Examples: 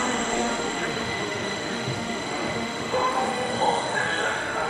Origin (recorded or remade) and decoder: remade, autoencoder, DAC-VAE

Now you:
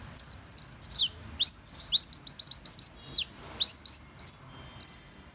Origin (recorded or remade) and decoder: recorded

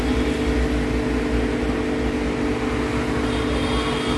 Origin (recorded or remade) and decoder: recorded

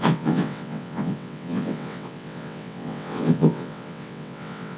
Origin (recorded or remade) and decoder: remade, vocoder, WaveNeXt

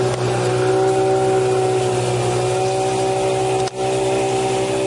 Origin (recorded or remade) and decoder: recorded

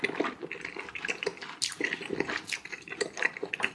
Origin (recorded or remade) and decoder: recorded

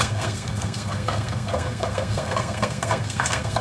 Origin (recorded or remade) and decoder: remade, codec, SNAC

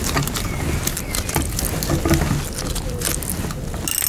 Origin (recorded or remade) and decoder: recorded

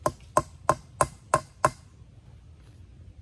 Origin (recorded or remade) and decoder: recorded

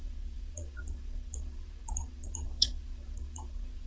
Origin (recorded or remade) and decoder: remade, vocoder, Vocos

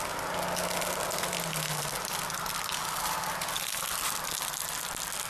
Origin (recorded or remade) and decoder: recorded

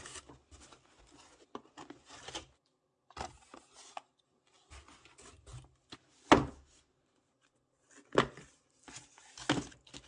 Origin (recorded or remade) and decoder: recorded